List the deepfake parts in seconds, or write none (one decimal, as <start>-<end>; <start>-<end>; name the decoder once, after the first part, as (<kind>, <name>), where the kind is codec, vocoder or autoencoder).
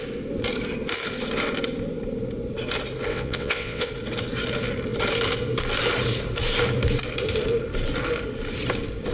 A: 3.1-3.9 (vocoder, WaveNeXt)